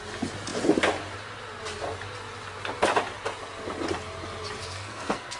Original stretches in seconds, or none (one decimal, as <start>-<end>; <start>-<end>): 0.0-4.6